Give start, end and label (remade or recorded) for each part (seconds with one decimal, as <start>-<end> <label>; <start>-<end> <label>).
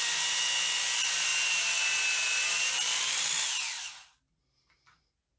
0.0-5.4 recorded